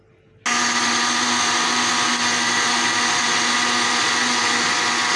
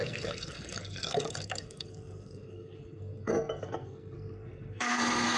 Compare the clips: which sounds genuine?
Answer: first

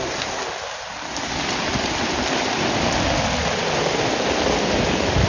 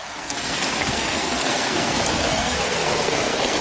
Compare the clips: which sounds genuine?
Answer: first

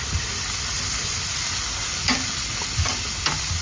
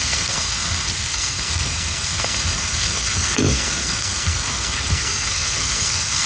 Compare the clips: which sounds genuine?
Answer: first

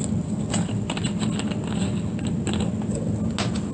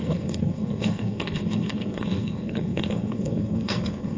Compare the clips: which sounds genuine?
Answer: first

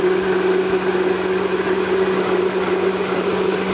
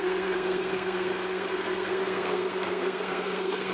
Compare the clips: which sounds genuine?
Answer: first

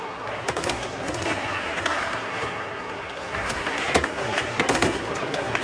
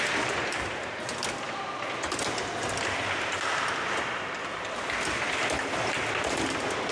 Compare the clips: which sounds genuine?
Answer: second